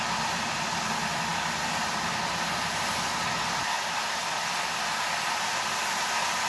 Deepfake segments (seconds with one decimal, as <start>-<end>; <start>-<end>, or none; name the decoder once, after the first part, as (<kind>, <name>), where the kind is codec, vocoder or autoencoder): none